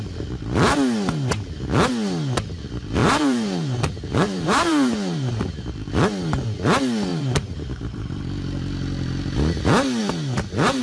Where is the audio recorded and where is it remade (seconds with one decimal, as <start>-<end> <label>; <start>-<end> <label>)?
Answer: 0.0-3.0 recorded; 3.0-5.7 remade; 5.7-7.1 recorded; 7.1-8.2 remade; 8.2-10.8 recorded